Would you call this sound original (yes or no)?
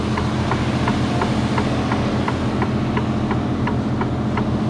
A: yes